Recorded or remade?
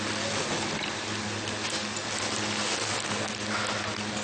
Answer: recorded